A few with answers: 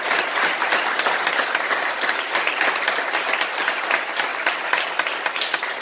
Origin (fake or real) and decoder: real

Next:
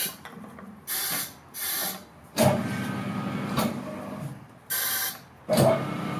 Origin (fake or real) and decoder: real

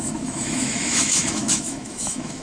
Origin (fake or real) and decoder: fake, autoencoder, DAC-VAE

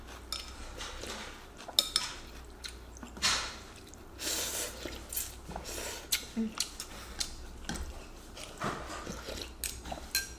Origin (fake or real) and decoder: real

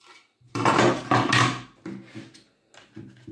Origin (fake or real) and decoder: real